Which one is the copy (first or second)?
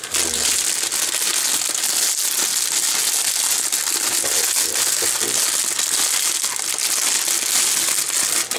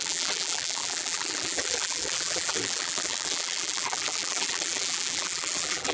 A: second